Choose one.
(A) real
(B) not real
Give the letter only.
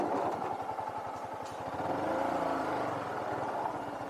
A